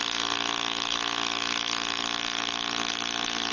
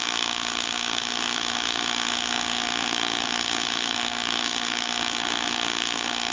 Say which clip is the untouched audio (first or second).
first